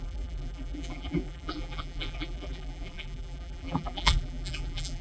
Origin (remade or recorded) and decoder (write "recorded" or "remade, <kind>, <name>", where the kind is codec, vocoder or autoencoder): remade, vocoder, BigVGAN v2